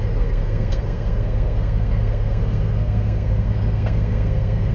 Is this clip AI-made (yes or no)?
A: yes